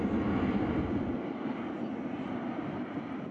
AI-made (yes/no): no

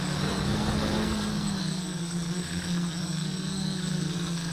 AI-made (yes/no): yes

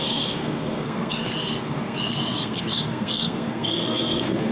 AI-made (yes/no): yes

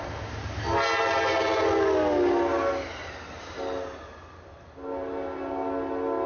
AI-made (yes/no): no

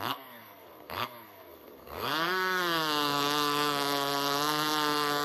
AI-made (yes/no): yes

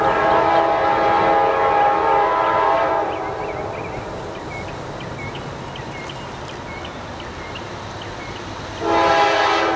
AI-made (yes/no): no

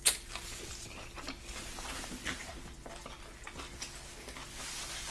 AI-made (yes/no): no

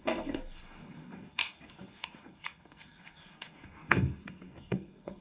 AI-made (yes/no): yes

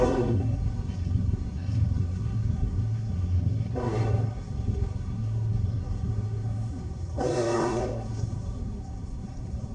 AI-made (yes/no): yes